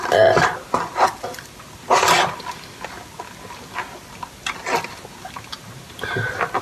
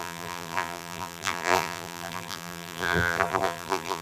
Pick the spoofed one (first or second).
second